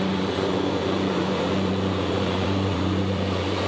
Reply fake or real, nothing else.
fake